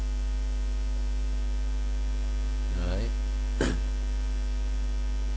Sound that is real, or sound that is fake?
real